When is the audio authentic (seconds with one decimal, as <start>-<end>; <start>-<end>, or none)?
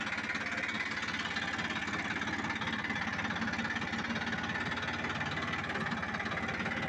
0.0-6.9